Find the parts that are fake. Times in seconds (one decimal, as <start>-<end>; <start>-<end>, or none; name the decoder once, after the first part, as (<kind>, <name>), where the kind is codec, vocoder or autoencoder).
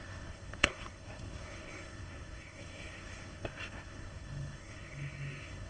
0.0-5.7 (codec, SNAC)